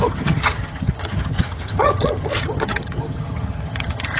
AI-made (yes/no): yes